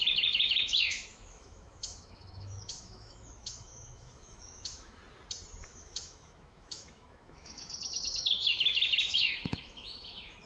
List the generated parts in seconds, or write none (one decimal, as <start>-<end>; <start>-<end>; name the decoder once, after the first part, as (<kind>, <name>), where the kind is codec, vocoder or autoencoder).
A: 0.0-5.0 (autoencoder, DAC-VAE); 5.6-10.5